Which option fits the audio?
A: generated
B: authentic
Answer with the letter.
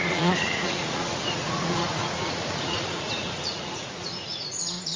A